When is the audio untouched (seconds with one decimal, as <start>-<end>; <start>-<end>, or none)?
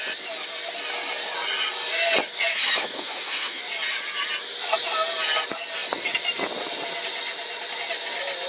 0.0-2.5; 3.6-8.5